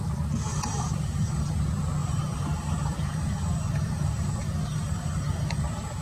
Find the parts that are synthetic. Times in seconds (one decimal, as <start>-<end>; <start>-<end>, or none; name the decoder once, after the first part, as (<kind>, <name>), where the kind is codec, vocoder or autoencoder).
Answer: 0.5-1.5 (vocoder, BigVGAN v2); 2.0-5.6

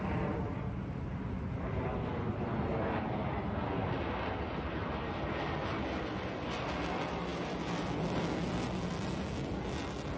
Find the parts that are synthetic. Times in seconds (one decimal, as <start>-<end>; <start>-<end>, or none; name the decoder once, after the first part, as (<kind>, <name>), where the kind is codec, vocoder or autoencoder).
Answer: none

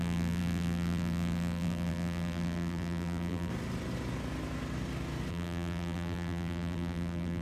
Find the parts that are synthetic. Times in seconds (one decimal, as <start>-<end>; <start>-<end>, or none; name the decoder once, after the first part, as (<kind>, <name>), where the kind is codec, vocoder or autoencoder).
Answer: 0.0-3.5 (vocoder, BigVGAN v2); 5.3-7.4

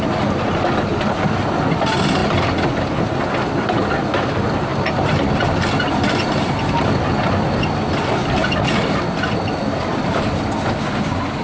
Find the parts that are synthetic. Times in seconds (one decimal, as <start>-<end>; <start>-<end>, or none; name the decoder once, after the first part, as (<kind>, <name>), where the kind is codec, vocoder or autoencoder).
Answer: 2.2-2.9 (vocoder, BigVGAN v2); 8.4-10.4

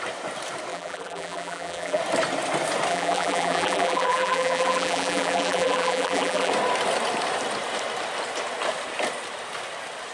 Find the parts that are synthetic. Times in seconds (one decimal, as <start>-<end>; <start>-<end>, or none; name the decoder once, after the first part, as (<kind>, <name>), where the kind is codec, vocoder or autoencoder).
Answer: 0.7-2.0 (vocoder, BigVGAN v2); 2.9-6.5